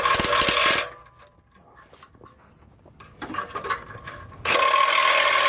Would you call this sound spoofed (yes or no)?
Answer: no